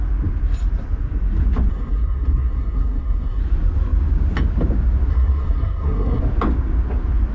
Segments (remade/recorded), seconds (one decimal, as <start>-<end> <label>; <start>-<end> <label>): 0.0-1.7 recorded; 1.7-3.4 remade; 3.4-5.1 recorded; 5.1-6.2 remade; 6.2-7.3 recorded